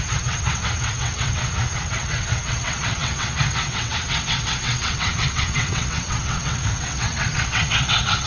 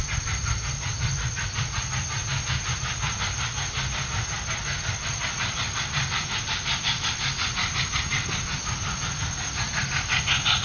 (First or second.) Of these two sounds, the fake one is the first